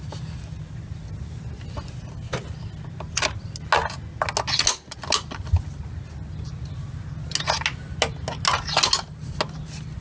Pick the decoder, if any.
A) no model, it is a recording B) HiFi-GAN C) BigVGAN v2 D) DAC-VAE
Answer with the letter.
A